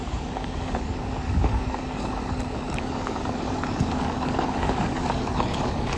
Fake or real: fake